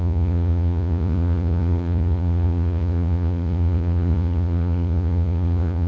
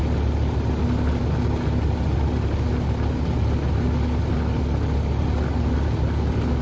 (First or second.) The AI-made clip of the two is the first